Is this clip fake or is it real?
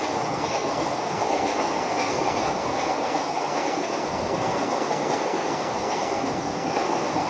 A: fake